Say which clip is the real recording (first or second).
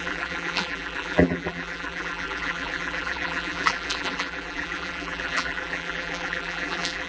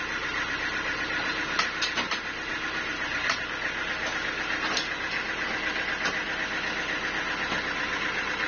second